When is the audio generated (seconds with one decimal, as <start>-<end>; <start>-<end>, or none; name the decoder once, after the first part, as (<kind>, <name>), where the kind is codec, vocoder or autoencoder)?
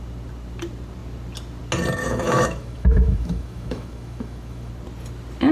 2.0-4.7 (autoencoder, DAC-VAE)